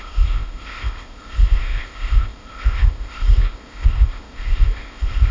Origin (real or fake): fake